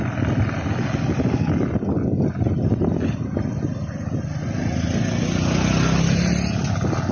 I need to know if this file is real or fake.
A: real